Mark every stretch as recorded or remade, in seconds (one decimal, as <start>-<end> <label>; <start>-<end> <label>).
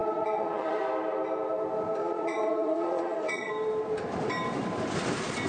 0.0-0.8 remade; 0.8-2.0 recorded; 2.0-3.5 remade; 3.5-5.5 recorded